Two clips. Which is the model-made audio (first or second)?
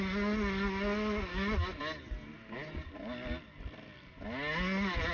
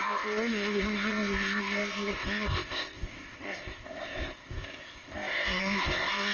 second